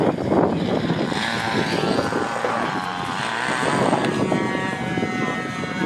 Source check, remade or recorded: recorded